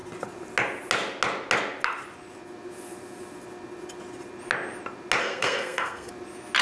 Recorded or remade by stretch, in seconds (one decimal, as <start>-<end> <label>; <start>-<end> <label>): 0.0-5.2 recorded; 5.2-6.1 remade; 6.1-6.6 recorded